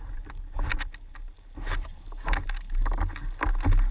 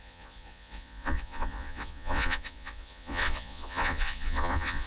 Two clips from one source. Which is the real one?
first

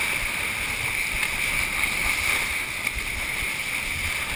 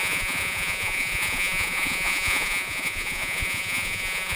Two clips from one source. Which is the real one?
first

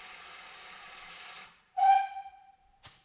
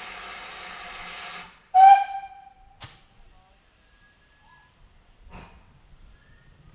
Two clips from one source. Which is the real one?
second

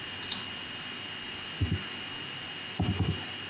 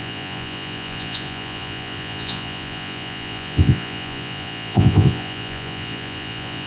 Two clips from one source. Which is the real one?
first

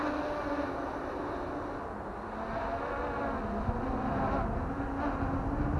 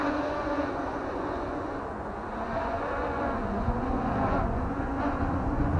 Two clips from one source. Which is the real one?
first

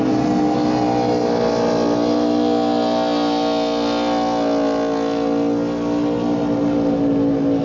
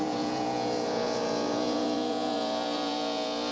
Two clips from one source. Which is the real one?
first